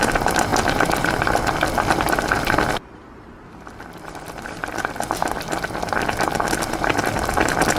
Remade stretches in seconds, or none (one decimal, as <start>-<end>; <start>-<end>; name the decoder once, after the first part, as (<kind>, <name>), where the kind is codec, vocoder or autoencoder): none